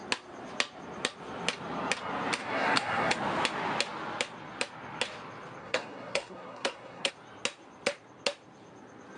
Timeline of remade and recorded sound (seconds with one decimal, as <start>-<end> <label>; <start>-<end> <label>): 0.0-2.4 recorded; 2.4-3.1 remade; 3.1-5.6 recorded; 5.6-7.1 remade; 7.1-9.2 recorded